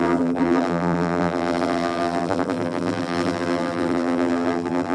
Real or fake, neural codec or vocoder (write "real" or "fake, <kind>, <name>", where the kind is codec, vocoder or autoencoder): fake, vocoder, BigVGAN v2